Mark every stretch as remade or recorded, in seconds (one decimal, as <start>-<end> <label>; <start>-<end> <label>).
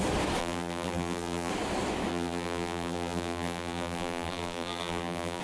0.0-0.4 recorded; 0.4-1.5 remade; 1.5-2.1 recorded; 2.1-5.4 remade